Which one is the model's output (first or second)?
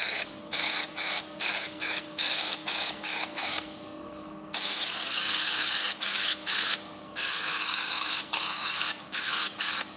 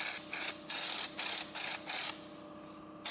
first